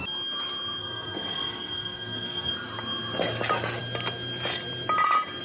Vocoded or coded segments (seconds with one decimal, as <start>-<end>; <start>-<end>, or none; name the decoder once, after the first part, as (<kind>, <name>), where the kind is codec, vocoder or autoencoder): 0.8-2.5 (codec, SNAC)